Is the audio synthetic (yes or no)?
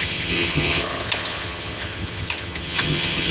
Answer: yes